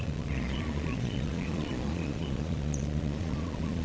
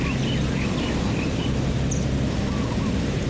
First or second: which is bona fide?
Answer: second